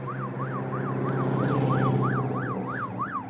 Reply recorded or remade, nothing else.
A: recorded